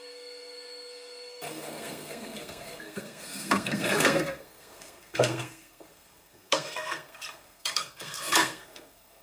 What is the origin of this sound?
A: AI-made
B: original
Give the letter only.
A